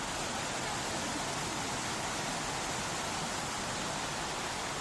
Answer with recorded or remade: recorded